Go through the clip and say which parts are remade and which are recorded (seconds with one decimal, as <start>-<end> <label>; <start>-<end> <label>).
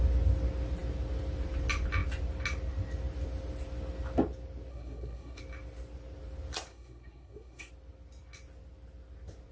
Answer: 0.0-4.7 recorded; 4.7-5.4 remade; 5.4-6.7 recorded; 6.7-7.7 remade; 7.7-9.5 recorded